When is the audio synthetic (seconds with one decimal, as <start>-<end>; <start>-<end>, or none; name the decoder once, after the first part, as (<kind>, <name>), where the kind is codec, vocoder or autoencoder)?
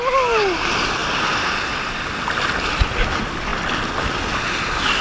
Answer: none